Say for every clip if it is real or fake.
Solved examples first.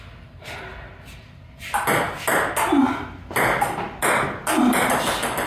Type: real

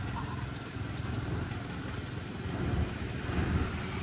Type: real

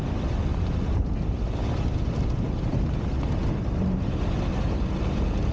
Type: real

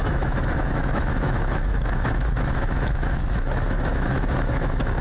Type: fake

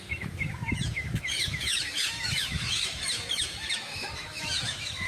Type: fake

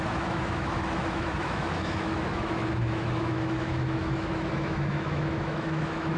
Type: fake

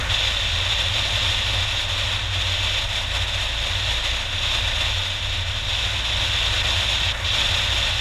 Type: real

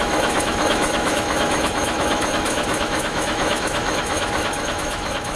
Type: fake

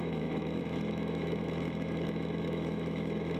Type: fake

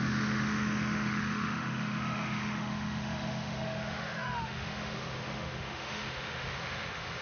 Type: fake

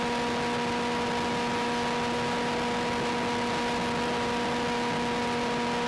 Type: real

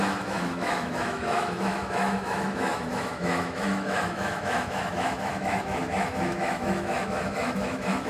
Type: fake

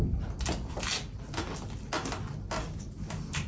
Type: real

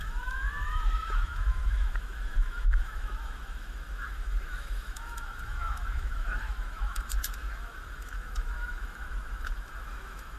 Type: fake